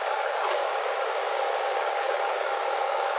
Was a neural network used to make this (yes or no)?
yes